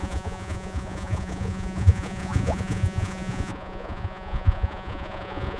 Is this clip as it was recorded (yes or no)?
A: no